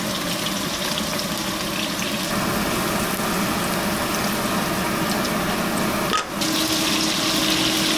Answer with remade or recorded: recorded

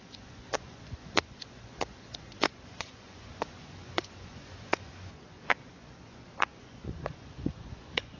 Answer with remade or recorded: remade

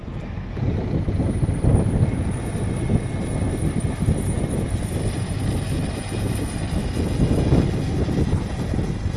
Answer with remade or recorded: recorded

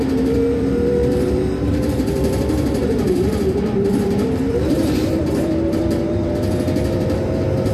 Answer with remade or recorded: remade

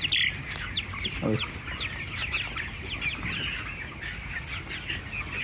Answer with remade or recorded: recorded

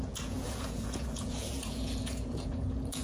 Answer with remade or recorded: remade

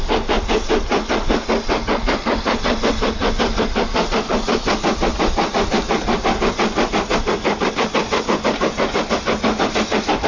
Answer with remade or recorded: recorded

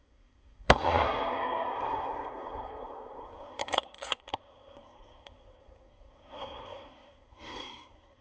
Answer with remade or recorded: remade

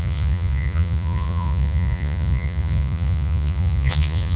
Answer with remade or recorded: remade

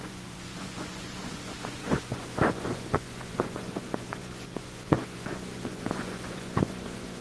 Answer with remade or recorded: remade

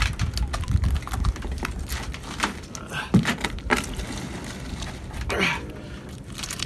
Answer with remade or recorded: remade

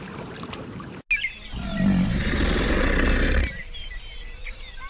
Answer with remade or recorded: recorded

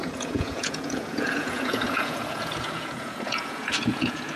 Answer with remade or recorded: remade